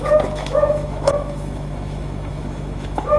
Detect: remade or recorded remade